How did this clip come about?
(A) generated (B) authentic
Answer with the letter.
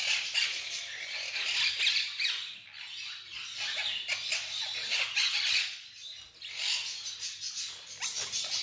B